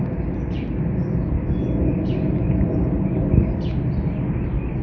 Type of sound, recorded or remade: recorded